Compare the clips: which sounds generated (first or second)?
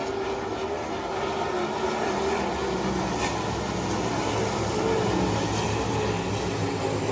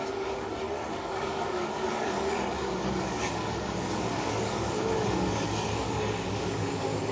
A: second